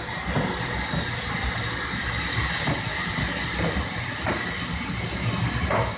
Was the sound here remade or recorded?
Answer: recorded